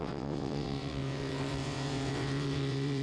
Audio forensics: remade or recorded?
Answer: remade